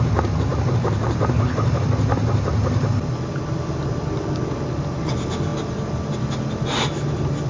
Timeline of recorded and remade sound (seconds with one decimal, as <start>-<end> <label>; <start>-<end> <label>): 0.0-7.5 recorded

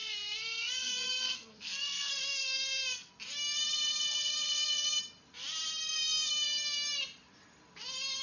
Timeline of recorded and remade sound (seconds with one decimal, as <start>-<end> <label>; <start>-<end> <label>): 0.0-3.1 remade; 3.1-5.8 recorded; 5.8-6.3 remade; 6.3-8.2 recorded

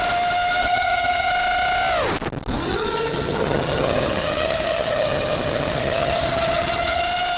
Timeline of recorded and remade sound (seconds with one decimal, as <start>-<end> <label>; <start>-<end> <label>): 0.0-0.6 recorded; 0.6-1.3 remade; 1.3-2.6 recorded; 2.6-7.0 remade; 7.0-7.4 recorded

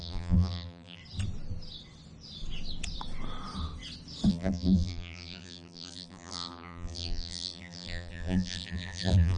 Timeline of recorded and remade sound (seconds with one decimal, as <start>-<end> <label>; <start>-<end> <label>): 0.0-1.0 remade; 1.0-4.3 recorded; 4.3-9.4 remade

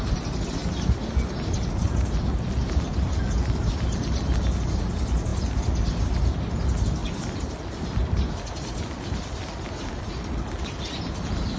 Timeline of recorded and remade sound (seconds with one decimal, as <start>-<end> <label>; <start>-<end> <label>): 0.0-11.6 recorded